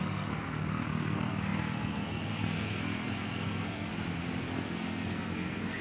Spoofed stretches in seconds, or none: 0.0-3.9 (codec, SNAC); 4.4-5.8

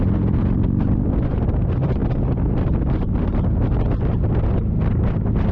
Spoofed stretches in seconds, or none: none

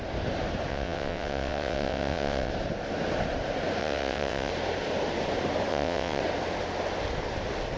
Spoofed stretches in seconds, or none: 0.7-2.5 (vocoder, WaveNeXt); 3.8-4.5; 5.7-6.2

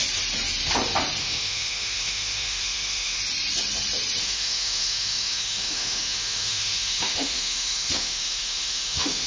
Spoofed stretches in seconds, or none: 1.2-3.2 (autoencoder, DAC-VAE); 4.2-9.3

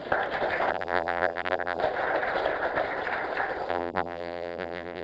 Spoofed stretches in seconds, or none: 0.7-1.8 (vocoder, BigVGAN v2); 3.7-5.0